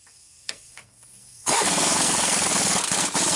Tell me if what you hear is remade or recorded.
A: remade